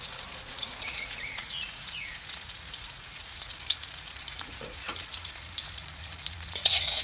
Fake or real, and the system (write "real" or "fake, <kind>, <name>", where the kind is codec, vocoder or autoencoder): fake, vocoder, Vocos